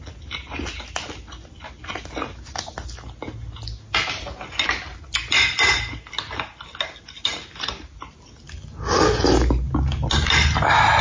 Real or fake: real